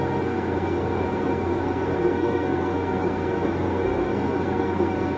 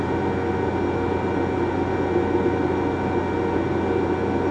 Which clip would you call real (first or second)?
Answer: second